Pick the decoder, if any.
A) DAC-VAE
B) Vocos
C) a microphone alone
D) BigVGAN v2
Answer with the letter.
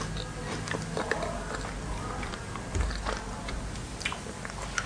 C